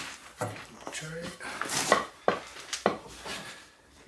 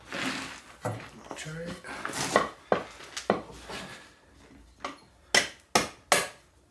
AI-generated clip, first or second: first